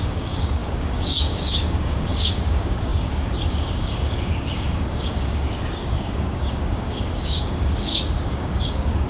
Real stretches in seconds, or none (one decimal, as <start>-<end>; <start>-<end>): none